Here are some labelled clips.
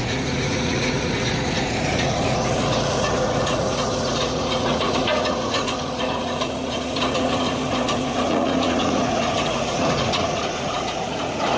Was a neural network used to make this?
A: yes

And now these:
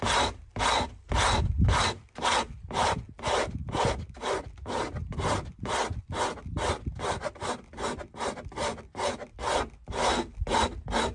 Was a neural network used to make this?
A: no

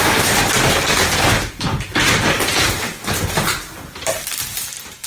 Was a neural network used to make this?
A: no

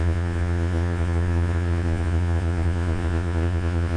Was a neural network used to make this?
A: yes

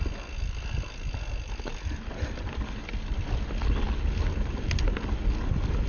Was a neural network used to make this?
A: no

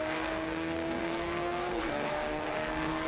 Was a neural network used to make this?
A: yes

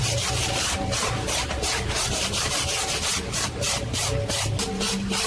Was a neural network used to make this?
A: no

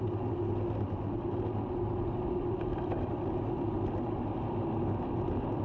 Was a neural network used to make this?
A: no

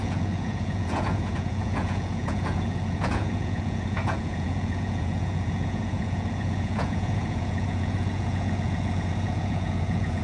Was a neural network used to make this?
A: yes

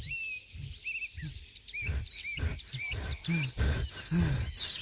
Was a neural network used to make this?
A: no